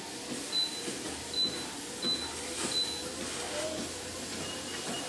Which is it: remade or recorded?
recorded